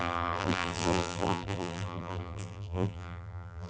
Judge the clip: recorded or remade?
remade